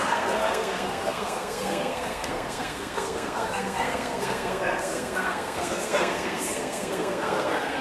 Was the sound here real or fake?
fake